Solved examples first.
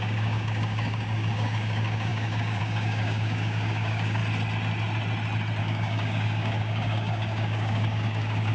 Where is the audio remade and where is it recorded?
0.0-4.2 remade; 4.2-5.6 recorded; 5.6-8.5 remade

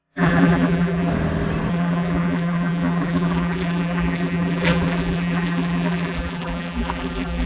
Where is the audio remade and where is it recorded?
0.0-1.1 remade; 1.1-1.7 recorded; 1.7-7.5 remade

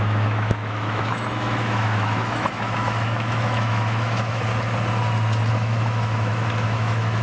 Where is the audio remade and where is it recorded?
0.0-4.5 remade; 4.5-5.5 recorded; 5.5-7.2 remade

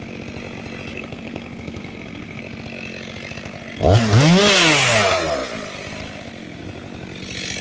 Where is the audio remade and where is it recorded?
0.0-0.9 recorded; 0.9-2.4 remade; 2.4-7.6 recorded

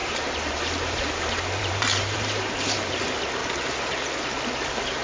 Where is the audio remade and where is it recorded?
0.0-3.0 remade; 3.0-5.0 recorded

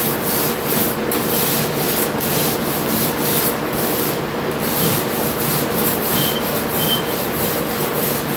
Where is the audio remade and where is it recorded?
0.0-8.4 recorded

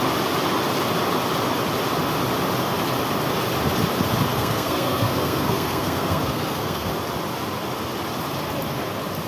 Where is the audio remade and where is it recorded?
0.0-4.3 recorded; 4.3-6.9 remade; 6.9-9.3 recorded

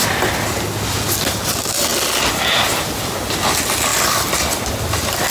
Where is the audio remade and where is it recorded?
0.0-5.3 recorded